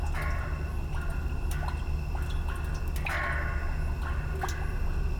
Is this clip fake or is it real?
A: real